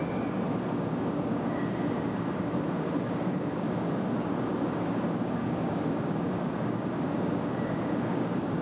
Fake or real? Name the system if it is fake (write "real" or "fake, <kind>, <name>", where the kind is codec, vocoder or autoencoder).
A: fake, codec, DAC